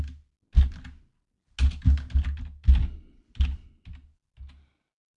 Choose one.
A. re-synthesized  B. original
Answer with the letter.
B